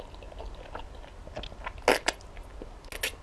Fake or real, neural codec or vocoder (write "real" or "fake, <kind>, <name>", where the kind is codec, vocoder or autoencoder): real